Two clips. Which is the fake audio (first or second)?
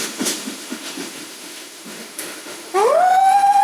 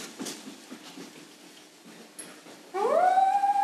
first